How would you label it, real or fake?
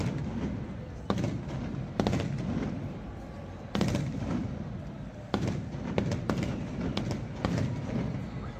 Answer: real